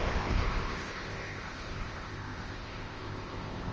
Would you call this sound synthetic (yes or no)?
yes